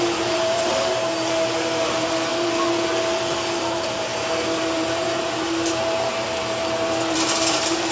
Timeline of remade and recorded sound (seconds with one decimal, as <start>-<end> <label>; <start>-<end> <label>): 0.0-2.3 remade; 2.3-3.6 recorded; 3.6-7.9 remade